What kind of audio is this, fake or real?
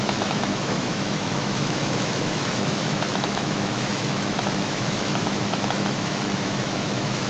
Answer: fake